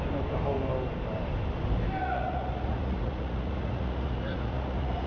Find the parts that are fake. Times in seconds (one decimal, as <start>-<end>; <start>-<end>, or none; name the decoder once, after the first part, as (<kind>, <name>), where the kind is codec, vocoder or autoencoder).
2.0-5.1 (vocoder, Vocos)

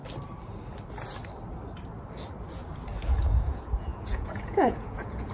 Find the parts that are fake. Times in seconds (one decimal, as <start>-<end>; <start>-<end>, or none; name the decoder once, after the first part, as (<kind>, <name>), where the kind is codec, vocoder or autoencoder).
3.2-5.3 (vocoder, Vocos)

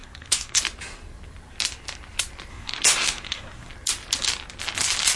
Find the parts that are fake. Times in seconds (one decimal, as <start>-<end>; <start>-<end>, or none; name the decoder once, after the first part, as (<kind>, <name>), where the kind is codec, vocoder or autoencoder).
0.0-0.6 (codec, SNAC); 2.5-3.7

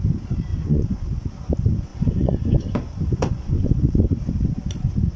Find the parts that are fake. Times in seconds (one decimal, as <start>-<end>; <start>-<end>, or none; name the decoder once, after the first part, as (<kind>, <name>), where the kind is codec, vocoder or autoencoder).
0.5-1.0 (vocoder, Vocos); 1.9-4.2

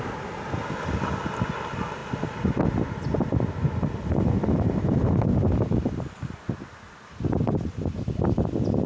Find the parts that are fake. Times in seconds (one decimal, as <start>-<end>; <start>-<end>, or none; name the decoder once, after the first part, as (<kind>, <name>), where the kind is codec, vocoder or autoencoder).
none

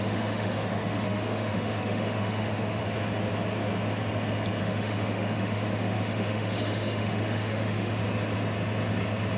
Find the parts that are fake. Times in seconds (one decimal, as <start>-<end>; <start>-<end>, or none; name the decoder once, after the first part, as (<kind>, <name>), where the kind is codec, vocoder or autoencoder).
0.0-2.8 (autoencoder, DAC-VAE); 4.6-8.0